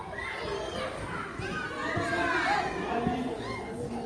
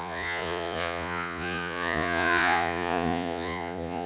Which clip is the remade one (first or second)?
second